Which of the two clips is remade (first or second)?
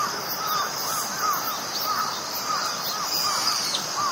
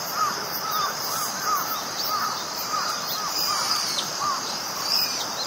second